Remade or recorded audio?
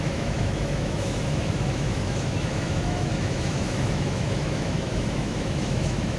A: remade